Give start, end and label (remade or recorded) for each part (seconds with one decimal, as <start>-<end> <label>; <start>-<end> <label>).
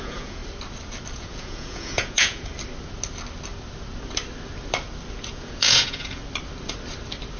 0.0-0.4 remade; 0.4-1.1 recorded; 1.1-2.5 remade; 2.5-5.3 recorded; 5.3-6.2 remade; 6.2-7.4 recorded